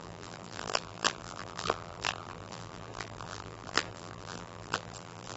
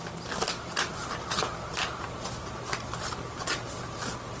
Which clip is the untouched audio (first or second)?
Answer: second